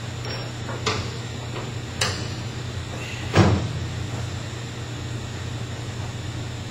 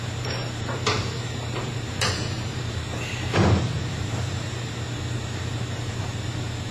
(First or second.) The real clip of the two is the first